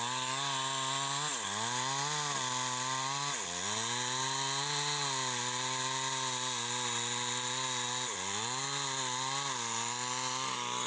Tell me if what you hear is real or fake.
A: real